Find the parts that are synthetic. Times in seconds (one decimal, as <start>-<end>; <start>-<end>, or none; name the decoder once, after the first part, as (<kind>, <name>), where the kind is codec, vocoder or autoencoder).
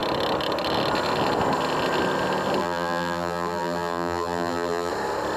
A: 2.6-4.9 (vocoder, BigVGAN v2)